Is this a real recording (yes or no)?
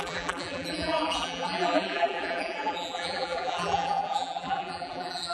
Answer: no